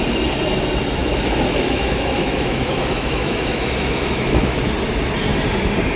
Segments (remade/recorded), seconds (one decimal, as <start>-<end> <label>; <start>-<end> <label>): 0.0-1.0 recorded; 1.0-4.6 remade; 4.6-6.0 recorded